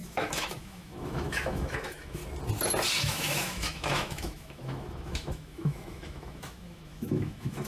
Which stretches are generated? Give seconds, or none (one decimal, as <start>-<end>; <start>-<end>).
0.0-2.2; 3.0-7.7